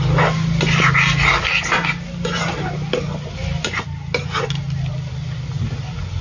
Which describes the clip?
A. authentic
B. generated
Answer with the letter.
A